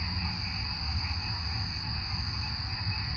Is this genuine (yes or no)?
yes